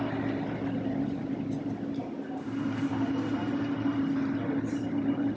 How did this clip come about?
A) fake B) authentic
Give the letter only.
B